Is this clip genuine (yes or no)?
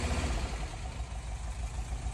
yes